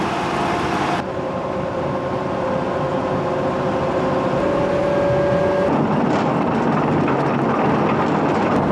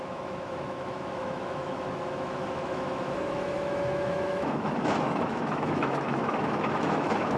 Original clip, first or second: first